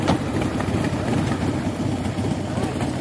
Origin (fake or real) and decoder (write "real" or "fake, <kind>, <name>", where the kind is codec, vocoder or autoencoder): real